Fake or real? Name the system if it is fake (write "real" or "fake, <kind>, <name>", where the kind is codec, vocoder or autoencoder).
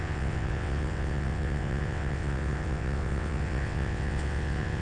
fake, vocoder, WaveNeXt